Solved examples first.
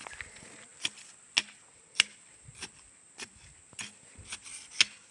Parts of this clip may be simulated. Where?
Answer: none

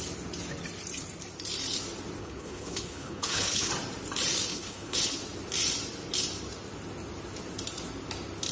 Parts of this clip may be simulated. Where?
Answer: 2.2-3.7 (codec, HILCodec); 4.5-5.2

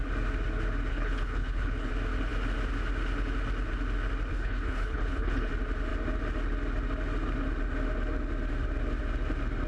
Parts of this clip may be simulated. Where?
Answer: 0.9-1.9 (codec, HILCodec); 4.3-5.5

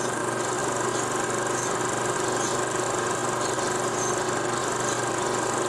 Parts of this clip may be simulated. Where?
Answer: none

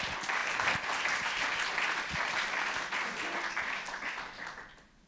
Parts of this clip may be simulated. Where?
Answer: none

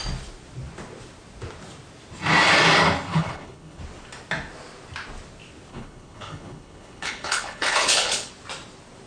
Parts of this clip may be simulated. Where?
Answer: 3.1-3.8 (codec, HILCodec); 5.7-8.3

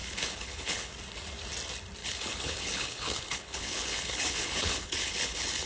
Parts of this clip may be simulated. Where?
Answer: 0.0-0.9 (codec, HILCodec); 2.0-5.7

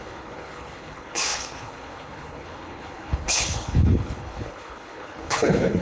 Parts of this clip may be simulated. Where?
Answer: 0.0-5.8 (codec, HILCodec)